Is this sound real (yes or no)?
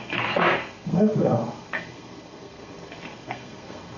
no